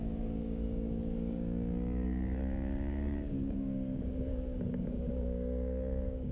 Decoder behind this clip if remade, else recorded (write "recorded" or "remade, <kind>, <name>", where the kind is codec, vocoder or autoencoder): remade, codec, DAC